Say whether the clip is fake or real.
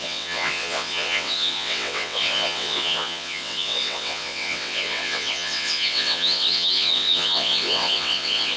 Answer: fake